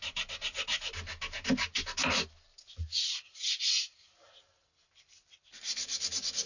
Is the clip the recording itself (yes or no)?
yes